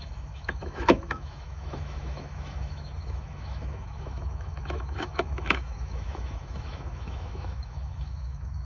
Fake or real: fake